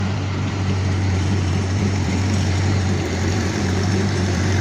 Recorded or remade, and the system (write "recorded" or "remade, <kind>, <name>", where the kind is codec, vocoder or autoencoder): remade, vocoder, BigVGAN v2